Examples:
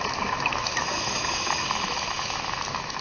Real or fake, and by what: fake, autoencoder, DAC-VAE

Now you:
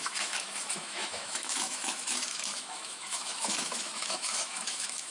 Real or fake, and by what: fake, autoencoder, DAC-VAE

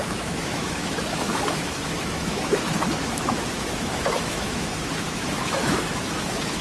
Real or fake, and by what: fake, autoencoder, DAC-VAE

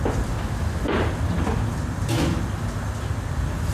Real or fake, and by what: real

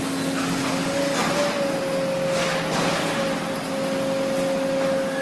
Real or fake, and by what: real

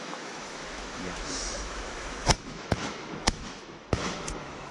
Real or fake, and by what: fake, autoencoder, DAC-VAE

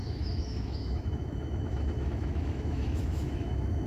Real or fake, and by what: fake, autoencoder, DAC-VAE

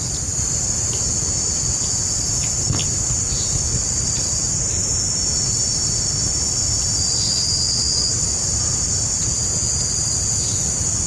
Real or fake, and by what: real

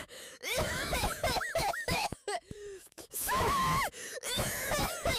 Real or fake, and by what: fake, autoencoder, DAC-VAE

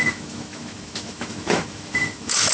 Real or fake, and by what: fake, autoencoder, DAC-VAE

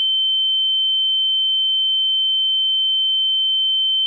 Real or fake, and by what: fake, autoencoder, DAC-VAE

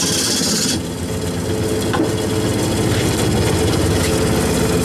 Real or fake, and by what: real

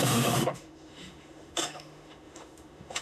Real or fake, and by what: fake, autoencoder, DAC-VAE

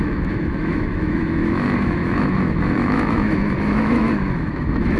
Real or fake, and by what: fake, autoencoder, DAC-VAE